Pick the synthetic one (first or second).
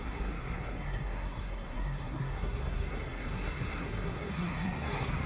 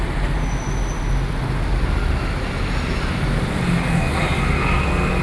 first